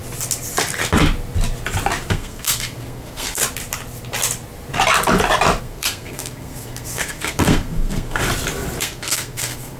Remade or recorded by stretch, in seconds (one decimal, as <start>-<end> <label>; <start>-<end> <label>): 0.0-2.1 recorded; 2.1-3.4 remade; 3.4-5.6 recorded; 5.6-8.2 remade; 8.2-8.8 recorded; 8.8-9.8 remade